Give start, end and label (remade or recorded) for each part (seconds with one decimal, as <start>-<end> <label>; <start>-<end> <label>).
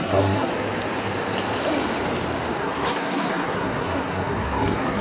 0.0-0.5 remade; 0.5-2.6 recorded; 2.6-5.0 remade